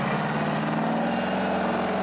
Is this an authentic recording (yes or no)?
yes